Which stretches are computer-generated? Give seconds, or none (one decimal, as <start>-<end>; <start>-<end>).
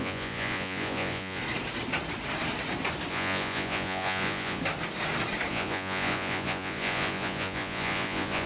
0.0-1.4; 3.1-4.6; 5.5-8.5